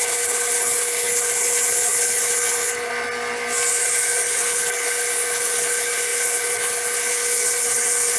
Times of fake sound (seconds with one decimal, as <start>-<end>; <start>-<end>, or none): 0.0-2.9; 3.7-8.2